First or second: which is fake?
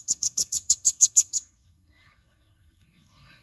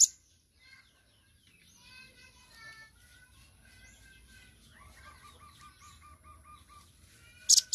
first